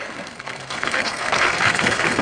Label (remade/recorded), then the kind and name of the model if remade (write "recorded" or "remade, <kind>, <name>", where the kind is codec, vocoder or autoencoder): remade, codec, SNAC